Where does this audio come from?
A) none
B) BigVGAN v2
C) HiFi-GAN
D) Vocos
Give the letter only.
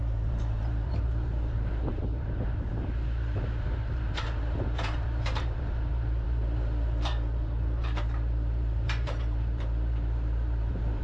B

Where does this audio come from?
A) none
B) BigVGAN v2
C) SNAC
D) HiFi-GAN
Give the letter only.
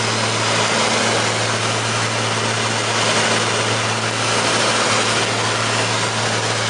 A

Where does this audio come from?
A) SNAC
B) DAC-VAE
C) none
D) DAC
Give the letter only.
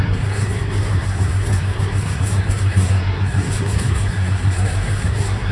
A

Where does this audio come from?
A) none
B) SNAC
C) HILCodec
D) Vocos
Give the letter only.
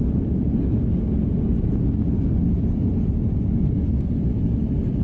A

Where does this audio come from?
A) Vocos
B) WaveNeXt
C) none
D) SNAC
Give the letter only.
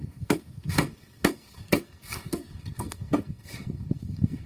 D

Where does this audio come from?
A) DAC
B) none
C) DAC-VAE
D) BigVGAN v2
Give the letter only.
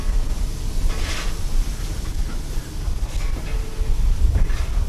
B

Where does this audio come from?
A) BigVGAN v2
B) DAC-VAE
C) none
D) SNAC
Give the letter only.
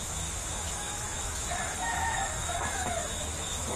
B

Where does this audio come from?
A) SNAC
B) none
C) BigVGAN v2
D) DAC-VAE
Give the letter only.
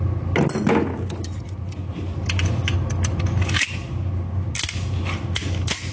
B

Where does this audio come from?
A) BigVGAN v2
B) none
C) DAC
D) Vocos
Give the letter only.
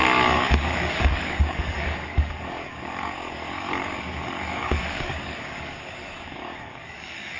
C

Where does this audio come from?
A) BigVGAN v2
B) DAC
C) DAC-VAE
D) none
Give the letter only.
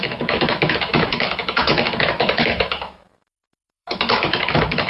C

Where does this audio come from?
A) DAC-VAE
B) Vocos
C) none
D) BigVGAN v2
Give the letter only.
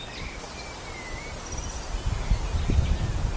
C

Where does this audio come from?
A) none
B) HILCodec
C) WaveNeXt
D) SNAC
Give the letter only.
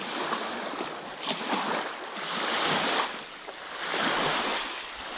A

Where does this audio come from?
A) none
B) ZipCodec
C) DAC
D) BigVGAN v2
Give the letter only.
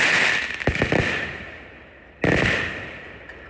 D